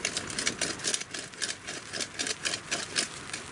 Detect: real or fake real